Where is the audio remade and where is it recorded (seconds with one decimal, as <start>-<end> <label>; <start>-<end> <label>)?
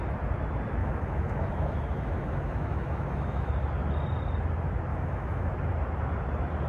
0.0-0.8 recorded; 0.8-3.5 remade; 3.5-4.9 recorded; 4.9-5.5 remade; 5.5-6.7 recorded